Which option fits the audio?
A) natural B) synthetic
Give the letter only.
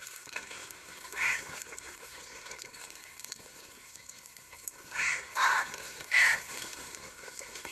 B